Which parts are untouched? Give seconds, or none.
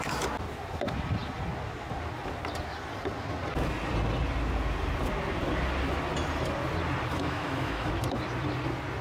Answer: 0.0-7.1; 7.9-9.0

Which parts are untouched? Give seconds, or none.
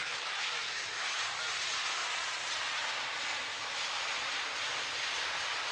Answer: 1.2-3.5; 4.0-5.7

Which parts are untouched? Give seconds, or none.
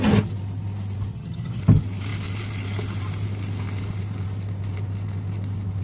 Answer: 0.0-1.1; 1.6-5.8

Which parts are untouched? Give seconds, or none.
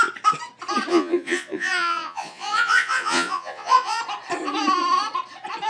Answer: 0.0-0.9; 4.0-5.7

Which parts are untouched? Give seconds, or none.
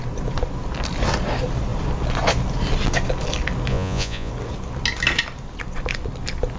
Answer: 0.0-3.7; 4.3-6.6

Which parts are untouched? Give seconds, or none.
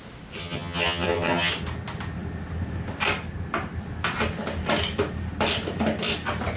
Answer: 0.0-0.4; 1.5-6.6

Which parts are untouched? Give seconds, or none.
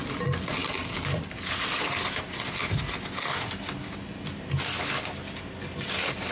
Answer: 0.0-6.3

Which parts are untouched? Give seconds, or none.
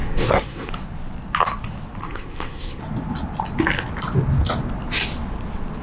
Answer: 0.7-2.0; 2.8-5.8